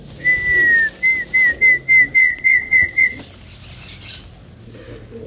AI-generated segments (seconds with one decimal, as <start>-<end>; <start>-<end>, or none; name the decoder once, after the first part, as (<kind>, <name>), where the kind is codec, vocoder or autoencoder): 2.2-3.2 (vocoder, WaveNeXt)